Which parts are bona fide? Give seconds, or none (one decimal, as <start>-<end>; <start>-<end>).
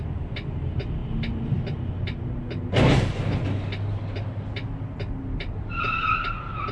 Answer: 0.0-6.7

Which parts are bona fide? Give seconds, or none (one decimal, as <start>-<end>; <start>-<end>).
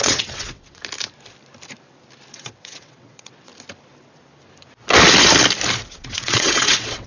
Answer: 0.8-2.3; 3.5-5.9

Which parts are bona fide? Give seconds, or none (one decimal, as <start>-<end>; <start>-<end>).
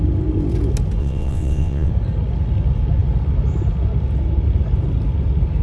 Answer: 0.0-1.0; 1.9-5.6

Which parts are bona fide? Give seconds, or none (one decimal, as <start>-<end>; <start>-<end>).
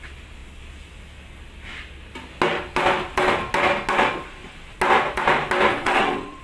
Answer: 0.0-5.7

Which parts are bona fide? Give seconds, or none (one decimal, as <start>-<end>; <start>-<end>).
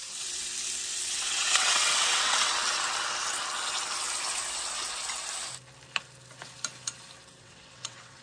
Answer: 0.5-1.0; 2.5-7.4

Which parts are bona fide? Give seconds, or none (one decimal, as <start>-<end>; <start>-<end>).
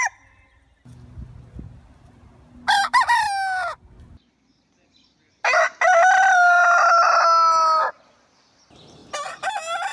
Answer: 0.0-9.9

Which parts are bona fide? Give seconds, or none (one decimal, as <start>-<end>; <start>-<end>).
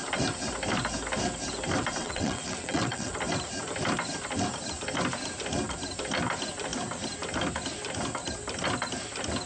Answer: 0.0-2.0; 3.1-9.5